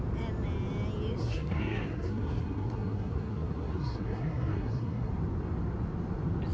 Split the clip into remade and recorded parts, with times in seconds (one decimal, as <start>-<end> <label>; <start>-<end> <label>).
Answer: 0.0-1.2 recorded; 1.2-5.1 remade; 5.1-6.5 recorded